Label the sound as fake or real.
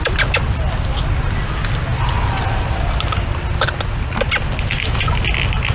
real